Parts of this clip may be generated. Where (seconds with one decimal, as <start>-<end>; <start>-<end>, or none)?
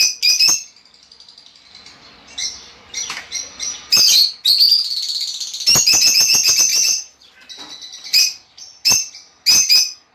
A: 2.4-3.1; 6.7-7.3